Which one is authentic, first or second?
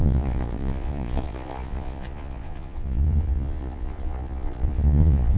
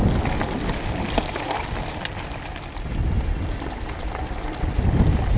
second